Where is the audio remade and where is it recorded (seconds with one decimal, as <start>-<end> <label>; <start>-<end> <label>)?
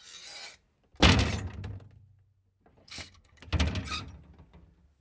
0.0-2.8 recorded; 2.8-3.4 remade; 3.4-5.0 recorded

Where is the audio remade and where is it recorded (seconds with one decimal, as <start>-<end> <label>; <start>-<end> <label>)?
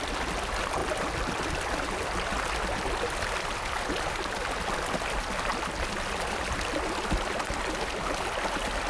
0.0-8.9 recorded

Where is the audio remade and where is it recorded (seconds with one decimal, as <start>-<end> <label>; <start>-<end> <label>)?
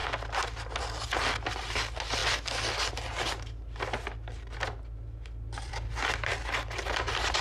0.0-7.4 recorded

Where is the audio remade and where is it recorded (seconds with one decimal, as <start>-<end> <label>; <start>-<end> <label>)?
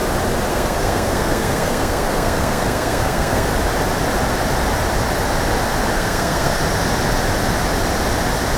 0.0-0.5 recorded; 0.5-3.5 remade; 3.5-5.9 recorded; 5.9-6.6 remade; 6.6-8.6 recorded